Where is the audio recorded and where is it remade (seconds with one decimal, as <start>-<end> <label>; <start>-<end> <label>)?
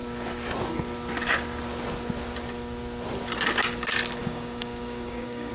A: 0.0-4.2 recorded; 4.2-5.5 remade